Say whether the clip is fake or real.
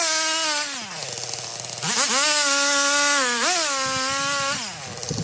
real